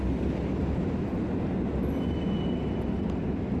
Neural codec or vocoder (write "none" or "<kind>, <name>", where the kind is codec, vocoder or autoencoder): none